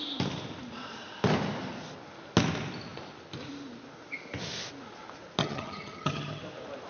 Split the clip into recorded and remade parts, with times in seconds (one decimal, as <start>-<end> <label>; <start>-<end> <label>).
0.0-5.4 recorded; 5.4-6.4 remade; 6.4-6.9 recorded